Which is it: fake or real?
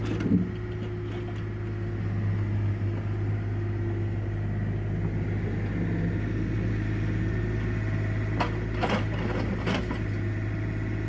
real